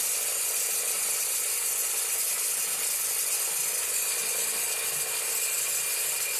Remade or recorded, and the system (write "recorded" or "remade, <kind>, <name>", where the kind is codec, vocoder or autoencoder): recorded